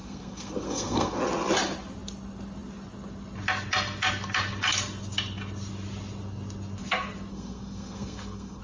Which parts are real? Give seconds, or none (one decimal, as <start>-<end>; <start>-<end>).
1.2-7.3